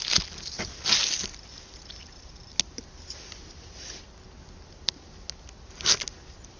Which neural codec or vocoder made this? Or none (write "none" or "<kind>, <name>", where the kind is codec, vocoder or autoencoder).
none